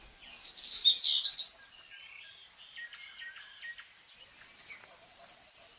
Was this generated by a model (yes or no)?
no